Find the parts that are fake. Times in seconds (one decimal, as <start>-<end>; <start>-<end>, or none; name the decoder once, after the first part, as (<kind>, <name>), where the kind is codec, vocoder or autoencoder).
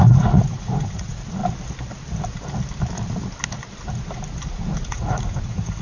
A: 0.0-1.4 (vocoder, Vocos); 4.9-5.8